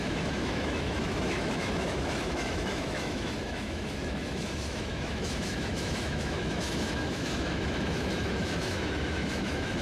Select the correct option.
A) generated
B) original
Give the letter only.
A